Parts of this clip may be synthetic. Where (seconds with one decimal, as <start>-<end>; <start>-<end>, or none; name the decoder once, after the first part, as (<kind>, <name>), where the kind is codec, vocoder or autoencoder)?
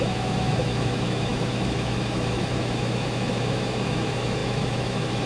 0.0-5.3 (autoencoder, DAC-VAE)